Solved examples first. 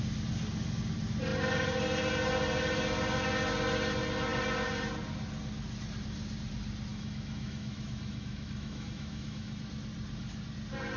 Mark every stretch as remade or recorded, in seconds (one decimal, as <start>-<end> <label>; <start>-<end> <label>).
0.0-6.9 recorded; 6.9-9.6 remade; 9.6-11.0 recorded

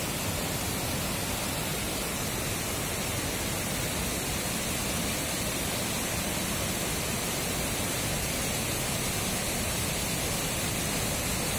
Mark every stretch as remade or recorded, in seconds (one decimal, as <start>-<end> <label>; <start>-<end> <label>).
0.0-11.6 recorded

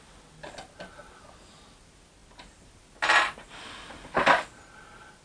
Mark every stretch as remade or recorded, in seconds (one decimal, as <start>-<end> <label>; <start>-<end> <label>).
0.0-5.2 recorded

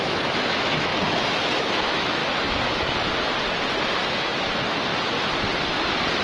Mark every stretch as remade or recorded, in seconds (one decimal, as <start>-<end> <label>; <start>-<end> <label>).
0.0-2.2 remade; 2.2-4.1 recorded; 4.1-4.9 remade; 4.9-6.2 recorded